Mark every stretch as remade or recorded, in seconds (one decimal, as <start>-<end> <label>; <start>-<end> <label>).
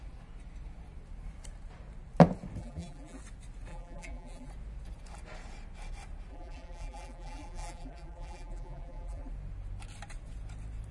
0.0-2.6 recorded; 2.6-3.2 remade; 3.2-3.7 recorded; 3.7-4.5 remade; 4.5-6.3 recorded; 6.3-9.3 remade; 9.3-10.9 recorded